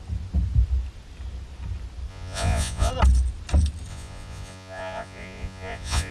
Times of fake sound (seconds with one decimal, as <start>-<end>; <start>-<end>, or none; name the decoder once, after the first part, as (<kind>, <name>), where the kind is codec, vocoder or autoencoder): 2.1-2.9 (vocoder, Vocos); 3.9-6.1